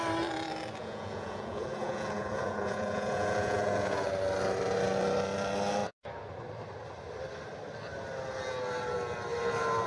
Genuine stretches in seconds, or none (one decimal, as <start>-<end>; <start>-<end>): 0.0-0.8; 4.1-9.9